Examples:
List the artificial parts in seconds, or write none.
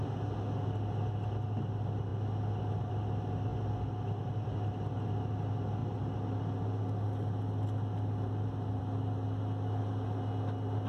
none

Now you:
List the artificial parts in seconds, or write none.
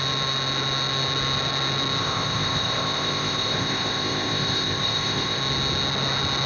2.0-5.4 (codec, ZipCodec)